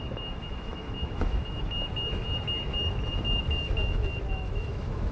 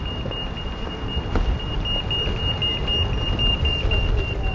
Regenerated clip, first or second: first